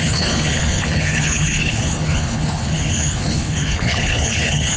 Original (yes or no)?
no